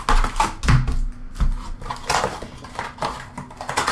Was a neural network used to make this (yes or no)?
no